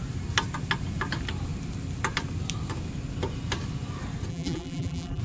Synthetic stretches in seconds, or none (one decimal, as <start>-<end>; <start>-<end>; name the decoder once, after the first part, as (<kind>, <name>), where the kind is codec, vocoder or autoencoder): 4.3-5.2 (vocoder, BigVGAN v2)

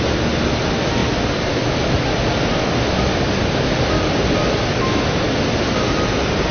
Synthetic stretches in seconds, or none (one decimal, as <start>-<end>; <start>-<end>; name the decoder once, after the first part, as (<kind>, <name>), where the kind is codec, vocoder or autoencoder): none

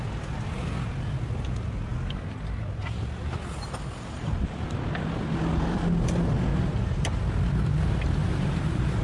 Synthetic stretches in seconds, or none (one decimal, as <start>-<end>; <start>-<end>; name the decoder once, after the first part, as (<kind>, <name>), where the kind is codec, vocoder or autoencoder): 6.5-7.2 (vocoder, BigVGAN v2); 8.2-9.0

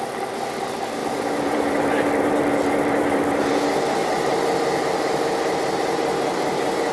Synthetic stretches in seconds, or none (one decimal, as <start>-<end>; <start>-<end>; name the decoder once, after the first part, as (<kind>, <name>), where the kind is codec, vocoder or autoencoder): 1.0-3.5 (vocoder, BigVGAN v2); 4.0-4.5

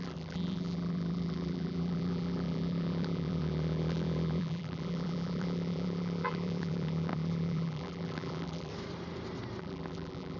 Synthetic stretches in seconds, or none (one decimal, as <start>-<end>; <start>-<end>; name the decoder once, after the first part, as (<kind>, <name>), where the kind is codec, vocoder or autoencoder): 0.0-8.7 (vocoder, BigVGAN v2); 9.6-10.4

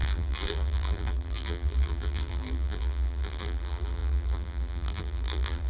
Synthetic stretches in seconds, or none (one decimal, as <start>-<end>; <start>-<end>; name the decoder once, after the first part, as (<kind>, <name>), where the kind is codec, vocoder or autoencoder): 0.0-5.7 (vocoder, BigVGAN v2)

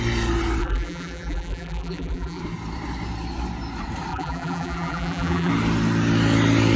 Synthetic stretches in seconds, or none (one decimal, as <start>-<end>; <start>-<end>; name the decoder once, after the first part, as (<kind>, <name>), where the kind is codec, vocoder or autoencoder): 0.6-2.4 (vocoder, BigVGAN v2); 4.1-5.5

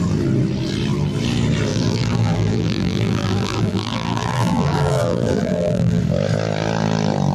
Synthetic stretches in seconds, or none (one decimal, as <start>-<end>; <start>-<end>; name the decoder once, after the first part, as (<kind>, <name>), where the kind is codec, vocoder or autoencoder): 1.7-6.0 (vocoder, BigVGAN v2)